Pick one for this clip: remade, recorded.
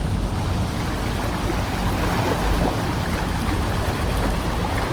recorded